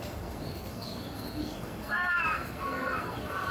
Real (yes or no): no